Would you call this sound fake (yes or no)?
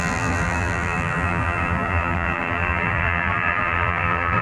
yes